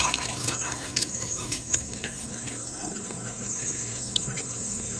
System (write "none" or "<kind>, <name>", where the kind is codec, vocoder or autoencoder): codec, SNAC